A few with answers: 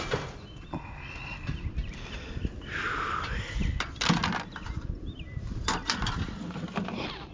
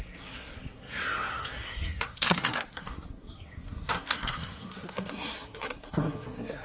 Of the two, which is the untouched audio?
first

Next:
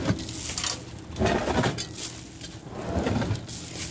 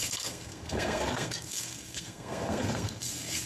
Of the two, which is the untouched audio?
first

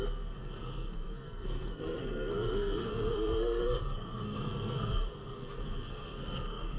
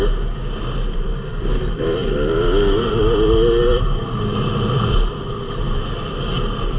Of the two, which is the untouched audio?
second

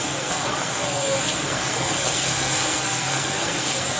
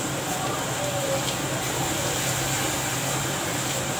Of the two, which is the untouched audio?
second